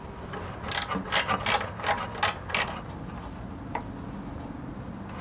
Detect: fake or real real